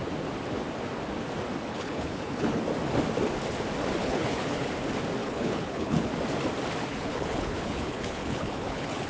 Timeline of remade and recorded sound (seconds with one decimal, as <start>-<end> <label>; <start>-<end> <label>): 0.0-1.7 recorded; 1.7-2.6 remade; 2.6-4.0 recorded; 4.0-4.7 remade; 4.7-5.2 recorded; 5.2-6.1 remade; 6.1-6.9 recorded; 6.9-9.1 remade